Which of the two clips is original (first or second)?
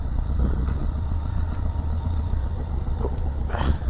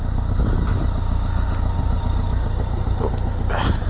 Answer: second